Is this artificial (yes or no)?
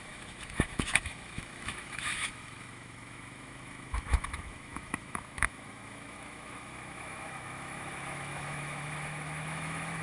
yes